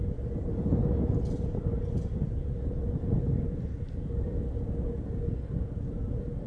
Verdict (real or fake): real